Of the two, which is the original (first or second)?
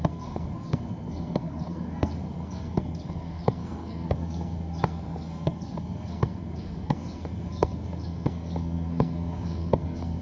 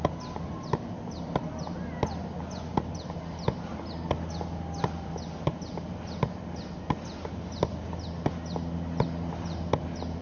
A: second